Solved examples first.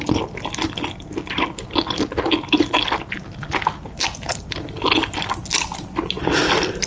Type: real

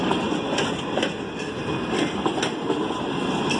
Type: real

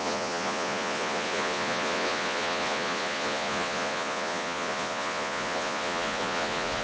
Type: fake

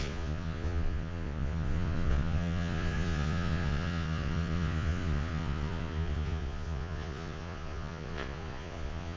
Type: fake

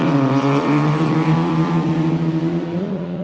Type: fake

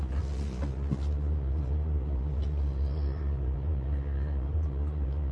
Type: fake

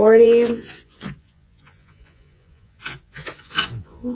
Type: fake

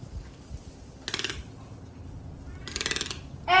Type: real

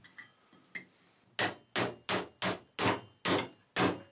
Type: real